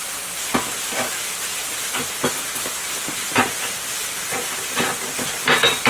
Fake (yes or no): no